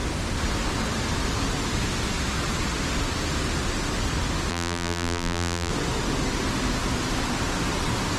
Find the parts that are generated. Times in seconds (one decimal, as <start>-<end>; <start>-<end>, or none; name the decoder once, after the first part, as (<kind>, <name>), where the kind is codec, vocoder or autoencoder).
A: 4.5-5.7 (vocoder, BigVGAN v2)